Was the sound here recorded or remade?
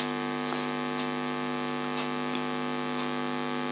recorded